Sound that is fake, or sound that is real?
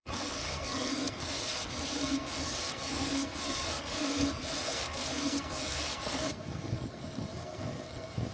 fake